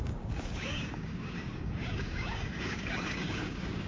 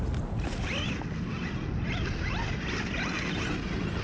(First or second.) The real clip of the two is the second